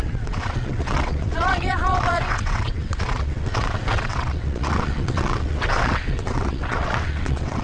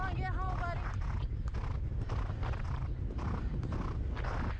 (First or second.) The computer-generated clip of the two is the first